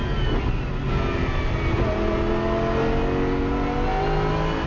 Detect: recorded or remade recorded